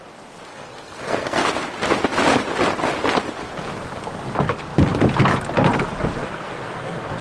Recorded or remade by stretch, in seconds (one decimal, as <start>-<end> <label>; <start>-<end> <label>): 0.0-0.5 recorded; 0.5-1.5 remade; 1.5-6.2 recorded; 6.2-7.2 remade